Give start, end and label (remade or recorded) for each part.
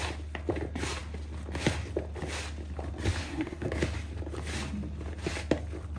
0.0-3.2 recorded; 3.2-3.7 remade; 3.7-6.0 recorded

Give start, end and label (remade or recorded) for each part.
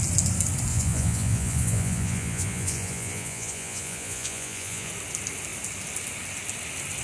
0.0-0.7 recorded; 0.7-4.9 remade; 4.9-7.0 recorded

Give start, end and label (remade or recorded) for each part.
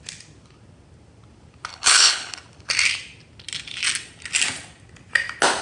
0.0-1.7 recorded; 1.7-2.4 remade; 2.4-5.6 recorded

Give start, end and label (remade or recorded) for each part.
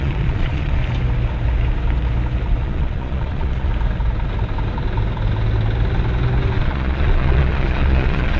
0.0-0.8 remade; 0.8-2.6 recorded; 2.6-3.7 remade; 3.7-6.6 recorded; 6.6-8.4 remade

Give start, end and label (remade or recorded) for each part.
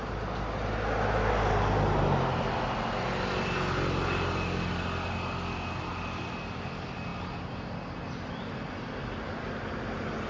0.0-10.3 recorded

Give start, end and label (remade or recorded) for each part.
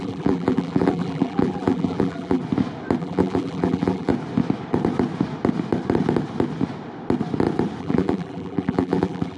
0.0-2.4 remade; 2.4-3.0 recorded; 3.0-4.1 remade; 4.1-7.8 recorded; 7.8-9.4 remade